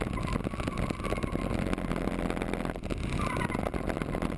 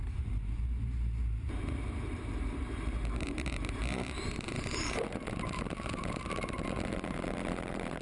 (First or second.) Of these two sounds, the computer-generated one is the second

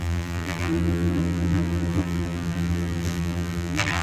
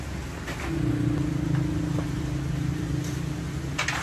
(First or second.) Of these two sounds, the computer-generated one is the first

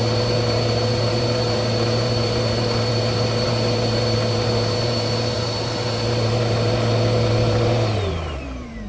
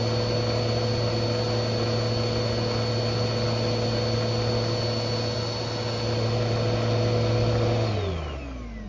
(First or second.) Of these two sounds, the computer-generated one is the first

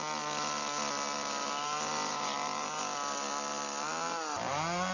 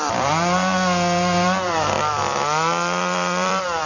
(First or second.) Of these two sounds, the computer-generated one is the second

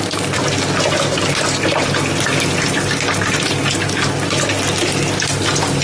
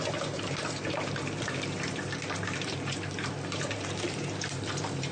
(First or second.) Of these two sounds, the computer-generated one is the second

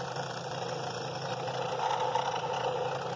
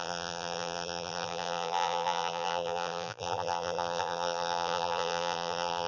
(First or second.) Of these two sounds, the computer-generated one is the second